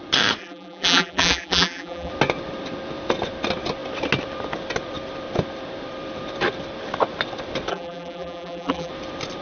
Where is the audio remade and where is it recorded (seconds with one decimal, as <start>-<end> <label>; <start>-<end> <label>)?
0.0-0.4 recorded; 0.4-2.1 remade; 2.1-7.7 recorded; 7.7-8.9 remade; 8.9-9.4 recorded